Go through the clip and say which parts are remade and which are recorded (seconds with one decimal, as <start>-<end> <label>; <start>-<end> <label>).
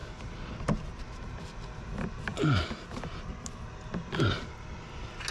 0.0-5.3 recorded